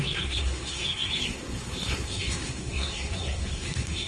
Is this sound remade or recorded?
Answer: remade